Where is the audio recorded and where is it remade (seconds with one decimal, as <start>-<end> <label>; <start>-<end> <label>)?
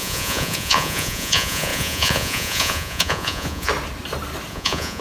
0.0-3.7 remade; 3.7-4.5 recorded; 4.5-5.0 remade